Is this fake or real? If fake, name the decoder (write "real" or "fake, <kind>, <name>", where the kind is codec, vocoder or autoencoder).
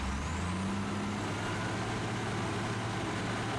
real